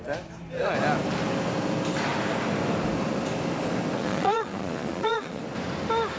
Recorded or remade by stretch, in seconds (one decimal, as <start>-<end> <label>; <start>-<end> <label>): 0.0-4.0 recorded; 4.0-5.4 remade; 5.4-6.2 recorded